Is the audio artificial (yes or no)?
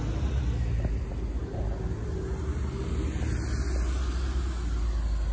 no